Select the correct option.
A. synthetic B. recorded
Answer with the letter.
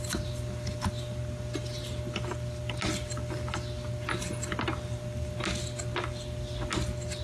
B